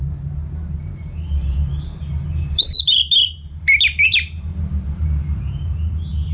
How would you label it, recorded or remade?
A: remade